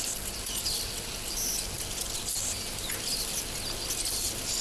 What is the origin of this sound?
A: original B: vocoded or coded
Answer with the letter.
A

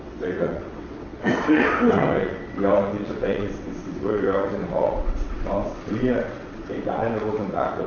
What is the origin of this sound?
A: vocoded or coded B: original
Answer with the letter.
A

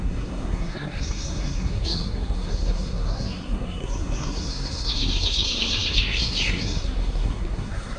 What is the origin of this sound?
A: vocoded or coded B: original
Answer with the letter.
A